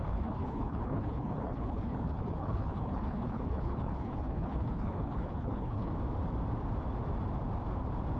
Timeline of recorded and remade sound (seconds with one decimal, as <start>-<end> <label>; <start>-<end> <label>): 0.0-5.9 remade; 5.9-8.2 recorded